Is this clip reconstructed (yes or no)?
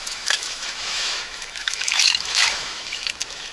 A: yes